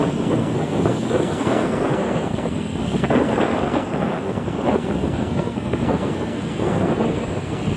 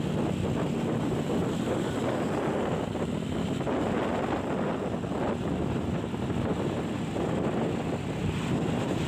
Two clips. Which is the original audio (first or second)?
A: second